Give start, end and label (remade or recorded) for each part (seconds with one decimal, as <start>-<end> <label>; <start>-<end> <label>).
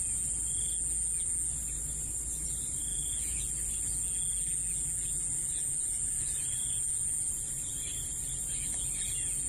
0.0-2.9 recorded; 2.9-3.5 remade; 3.5-5.4 recorded; 5.4-7.5 remade; 7.5-9.5 recorded